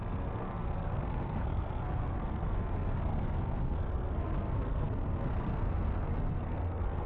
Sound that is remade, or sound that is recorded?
remade